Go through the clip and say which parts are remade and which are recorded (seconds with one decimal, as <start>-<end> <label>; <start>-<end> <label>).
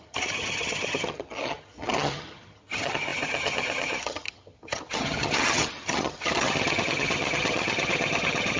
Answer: 0.0-8.6 remade